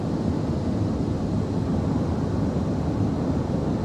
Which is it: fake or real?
real